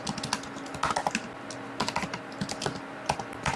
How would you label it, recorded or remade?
recorded